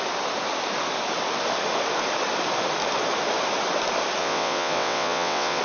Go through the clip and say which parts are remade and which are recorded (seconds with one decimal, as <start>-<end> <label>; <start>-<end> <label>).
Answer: 0.0-4.2 recorded; 4.2-5.6 remade